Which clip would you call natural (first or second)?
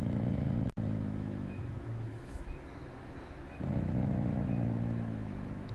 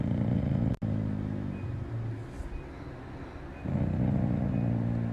second